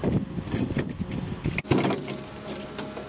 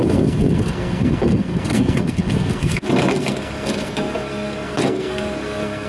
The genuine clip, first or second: first